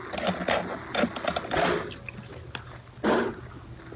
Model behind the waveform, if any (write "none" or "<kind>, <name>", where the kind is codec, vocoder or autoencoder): none